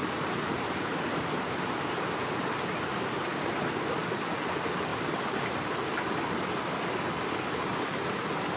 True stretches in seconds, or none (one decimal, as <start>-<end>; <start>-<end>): 2.1-8.6